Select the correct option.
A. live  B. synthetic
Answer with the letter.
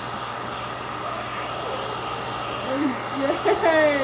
A